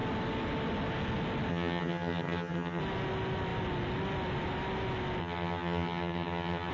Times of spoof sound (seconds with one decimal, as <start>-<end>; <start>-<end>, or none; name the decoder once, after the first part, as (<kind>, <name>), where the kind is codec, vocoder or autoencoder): 1.5-2.8 (vocoder, HiFi-GAN); 5.2-6.7